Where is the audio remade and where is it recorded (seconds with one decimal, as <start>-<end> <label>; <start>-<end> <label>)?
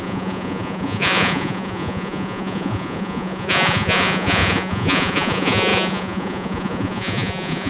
0.0-7.7 remade